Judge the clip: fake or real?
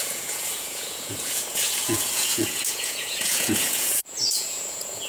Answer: fake